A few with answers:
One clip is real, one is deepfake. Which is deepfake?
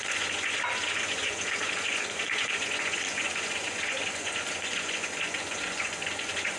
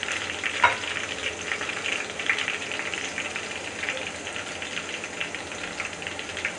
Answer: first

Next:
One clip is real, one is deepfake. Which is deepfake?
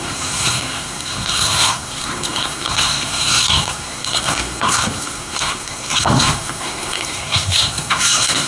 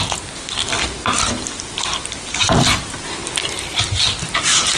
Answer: first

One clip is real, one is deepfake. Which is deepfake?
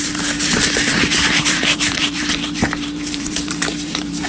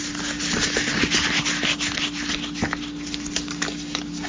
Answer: first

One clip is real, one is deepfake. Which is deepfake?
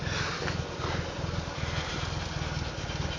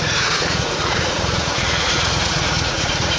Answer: second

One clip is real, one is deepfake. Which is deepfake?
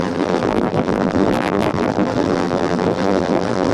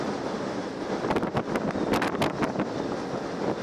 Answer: first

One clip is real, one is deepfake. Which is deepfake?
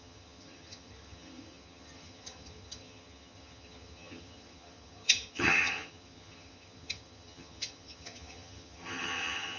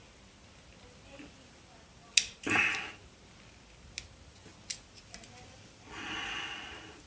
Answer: first